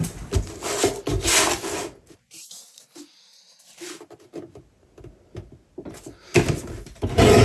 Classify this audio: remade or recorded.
recorded